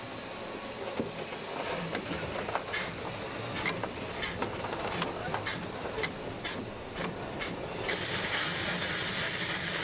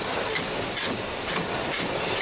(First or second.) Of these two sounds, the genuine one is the first